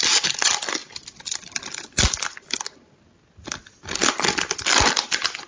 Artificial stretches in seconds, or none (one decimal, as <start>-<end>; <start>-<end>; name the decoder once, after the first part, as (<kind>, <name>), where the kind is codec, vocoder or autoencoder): none